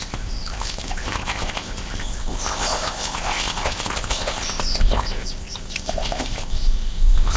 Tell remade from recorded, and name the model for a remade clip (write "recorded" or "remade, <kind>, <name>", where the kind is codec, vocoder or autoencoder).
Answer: remade, codec, ZipCodec